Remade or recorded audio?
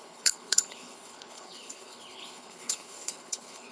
remade